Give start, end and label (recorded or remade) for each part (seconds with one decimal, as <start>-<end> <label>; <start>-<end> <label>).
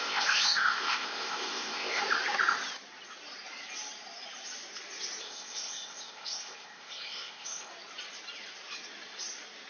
0.0-2.0 remade; 2.0-5.2 recorded; 5.2-7.7 remade; 7.7-9.7 recorded